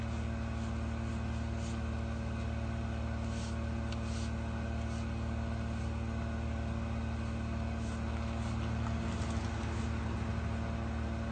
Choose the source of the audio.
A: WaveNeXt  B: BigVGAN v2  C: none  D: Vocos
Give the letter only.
C